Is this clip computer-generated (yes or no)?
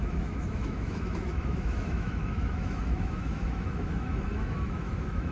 yes